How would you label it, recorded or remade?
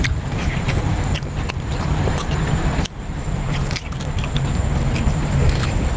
remade